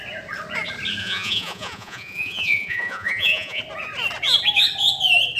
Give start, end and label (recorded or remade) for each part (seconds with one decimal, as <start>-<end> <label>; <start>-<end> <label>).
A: 0.0-1.0 recorded; 1.0-3.6 remade; 3.6-5.4 recorded